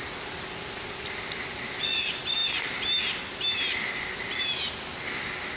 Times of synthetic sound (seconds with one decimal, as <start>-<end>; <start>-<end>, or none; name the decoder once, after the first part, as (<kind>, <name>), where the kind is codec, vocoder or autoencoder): none